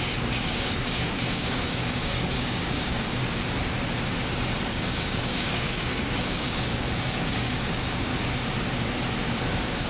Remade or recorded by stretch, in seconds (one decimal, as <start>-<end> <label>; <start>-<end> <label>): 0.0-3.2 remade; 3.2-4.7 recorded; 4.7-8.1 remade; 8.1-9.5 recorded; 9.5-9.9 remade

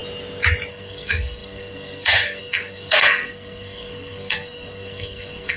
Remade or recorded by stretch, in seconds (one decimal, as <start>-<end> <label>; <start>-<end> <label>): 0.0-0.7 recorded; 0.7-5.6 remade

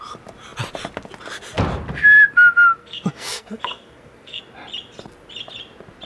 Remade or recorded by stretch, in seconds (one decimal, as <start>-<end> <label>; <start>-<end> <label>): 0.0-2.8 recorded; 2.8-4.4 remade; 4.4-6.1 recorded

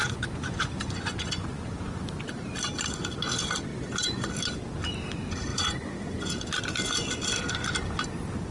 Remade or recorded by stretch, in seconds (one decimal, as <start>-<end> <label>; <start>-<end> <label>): 0.0-1.9 remade; 1.9-3.7 recorded; 3.7-4.3 remade; 4.3-5.5 recorded; 5.5-6.3 remade; 6.3-8.5 recorded